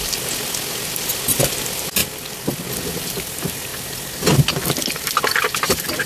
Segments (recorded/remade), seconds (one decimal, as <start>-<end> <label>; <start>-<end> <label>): 0.0-6.1 recorded